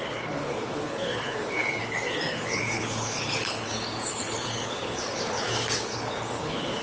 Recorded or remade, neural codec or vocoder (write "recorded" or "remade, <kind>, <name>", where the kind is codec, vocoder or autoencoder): remade, codec, HILCodec